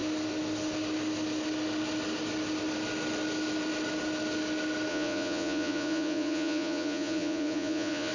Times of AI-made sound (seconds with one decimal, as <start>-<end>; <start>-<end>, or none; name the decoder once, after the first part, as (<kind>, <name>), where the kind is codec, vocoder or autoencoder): 4.9-8.1 (vocoder, Vocos)